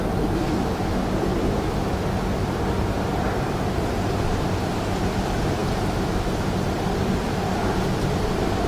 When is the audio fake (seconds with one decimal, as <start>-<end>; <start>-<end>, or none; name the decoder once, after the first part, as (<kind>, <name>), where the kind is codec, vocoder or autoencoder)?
1.3-2.0 (autoencoder, DAC-VAE)